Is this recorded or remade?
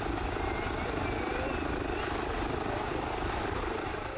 recorded